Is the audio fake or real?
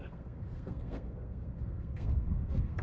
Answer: fake